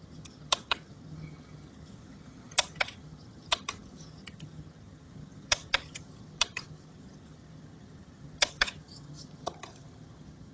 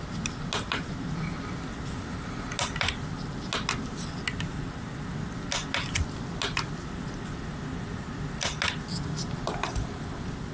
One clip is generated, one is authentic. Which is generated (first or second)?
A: first